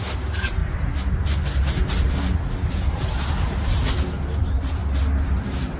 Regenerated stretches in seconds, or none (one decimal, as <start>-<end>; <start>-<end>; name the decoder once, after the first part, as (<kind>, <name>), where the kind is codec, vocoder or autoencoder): 0.0-0.6 (vocoder, BigVGAN v2); 2.7-4.8; 5.3-5.8